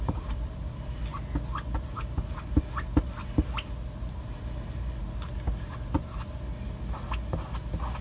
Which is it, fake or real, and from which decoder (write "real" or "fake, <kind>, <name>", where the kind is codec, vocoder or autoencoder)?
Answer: real